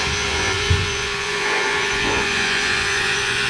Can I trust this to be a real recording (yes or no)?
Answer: no